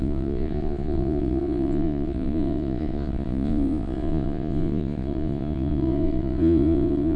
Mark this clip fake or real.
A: fake